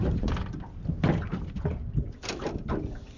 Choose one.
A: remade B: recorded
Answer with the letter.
B